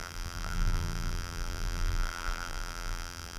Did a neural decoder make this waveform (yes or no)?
yes